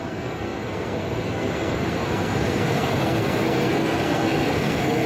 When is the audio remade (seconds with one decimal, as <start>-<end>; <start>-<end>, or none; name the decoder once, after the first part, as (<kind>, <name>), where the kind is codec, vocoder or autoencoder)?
0.0-5.1 (codec, SNAC)